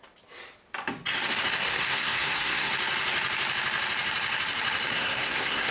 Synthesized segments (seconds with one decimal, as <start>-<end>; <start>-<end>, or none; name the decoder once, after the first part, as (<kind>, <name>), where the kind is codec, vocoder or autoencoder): 1.6-2.7 (codec, SNAC); 4.9-5.7